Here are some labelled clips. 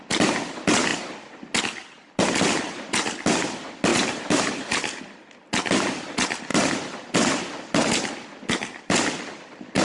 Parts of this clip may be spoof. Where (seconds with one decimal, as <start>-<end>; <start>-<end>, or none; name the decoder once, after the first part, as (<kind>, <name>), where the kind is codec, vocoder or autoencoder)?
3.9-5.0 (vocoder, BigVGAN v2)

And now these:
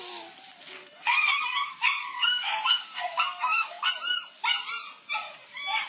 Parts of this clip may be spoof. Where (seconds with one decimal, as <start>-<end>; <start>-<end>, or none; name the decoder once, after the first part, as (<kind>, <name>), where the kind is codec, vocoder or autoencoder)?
0.8-3.9 (codec, SNAC)

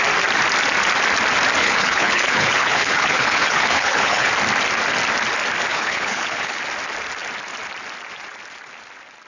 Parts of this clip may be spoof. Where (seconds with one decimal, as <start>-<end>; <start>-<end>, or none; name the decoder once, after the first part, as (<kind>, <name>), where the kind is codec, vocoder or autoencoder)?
1.6-4.3 (codec, HILCodec); 5.7-6.6

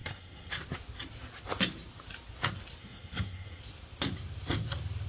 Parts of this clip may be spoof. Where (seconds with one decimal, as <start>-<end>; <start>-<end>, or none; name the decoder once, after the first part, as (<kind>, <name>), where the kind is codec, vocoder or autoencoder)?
0.0-0.5 (codec, SNAC); 2.8-3.6

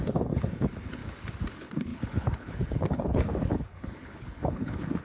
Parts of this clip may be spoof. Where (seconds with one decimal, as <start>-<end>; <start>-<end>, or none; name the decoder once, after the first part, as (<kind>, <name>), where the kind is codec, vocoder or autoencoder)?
0.0-1.0 (codec, HILCodec); 1.5-5.0

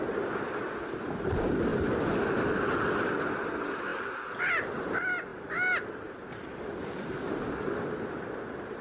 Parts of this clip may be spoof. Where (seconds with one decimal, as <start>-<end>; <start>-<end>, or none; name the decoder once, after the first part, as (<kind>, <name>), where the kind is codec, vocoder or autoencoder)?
none

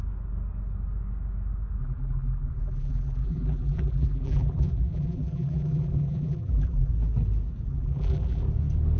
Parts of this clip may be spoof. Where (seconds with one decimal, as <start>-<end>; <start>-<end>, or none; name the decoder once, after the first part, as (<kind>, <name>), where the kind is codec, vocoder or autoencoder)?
1.8-6.9 (vocoder, BigVGAN v2); 7.7-8.4